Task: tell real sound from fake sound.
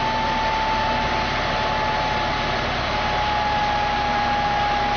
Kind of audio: real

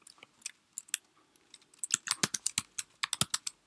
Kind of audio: real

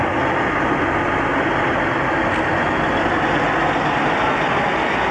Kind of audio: real